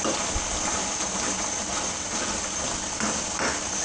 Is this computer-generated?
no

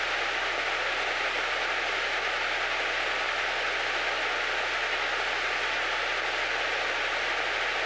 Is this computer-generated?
no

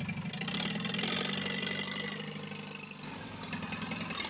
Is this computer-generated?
no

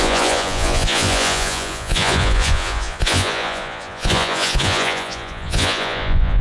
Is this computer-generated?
yes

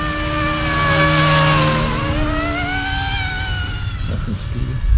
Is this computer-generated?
no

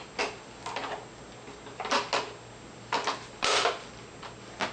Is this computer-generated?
no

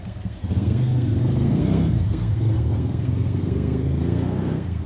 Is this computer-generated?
yes